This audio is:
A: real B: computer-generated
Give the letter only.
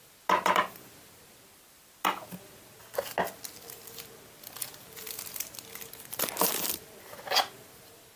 A